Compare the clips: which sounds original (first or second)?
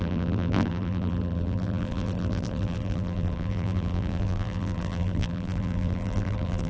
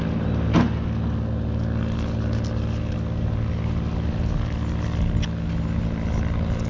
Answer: second